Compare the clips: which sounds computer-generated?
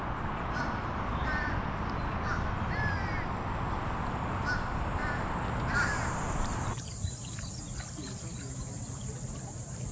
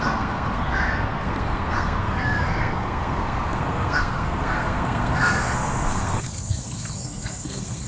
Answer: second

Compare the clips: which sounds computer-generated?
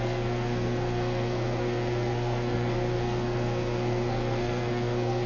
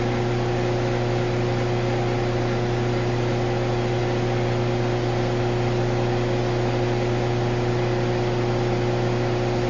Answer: first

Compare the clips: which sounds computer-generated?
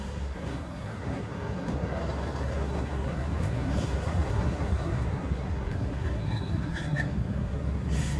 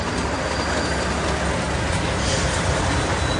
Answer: first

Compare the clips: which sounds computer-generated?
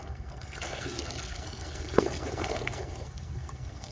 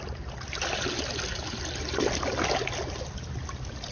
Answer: first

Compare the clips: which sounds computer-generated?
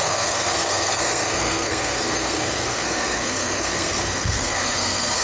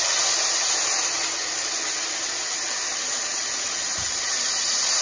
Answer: first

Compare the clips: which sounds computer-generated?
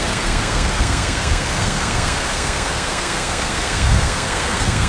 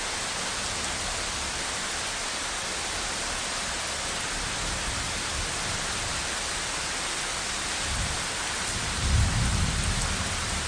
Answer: first